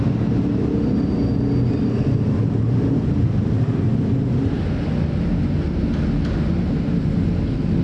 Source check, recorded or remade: recorded